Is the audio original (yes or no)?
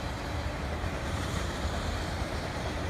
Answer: no